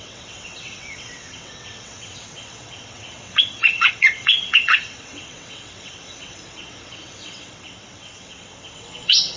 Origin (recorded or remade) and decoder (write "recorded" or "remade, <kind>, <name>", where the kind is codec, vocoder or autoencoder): remade, vocoder, WaveNeXt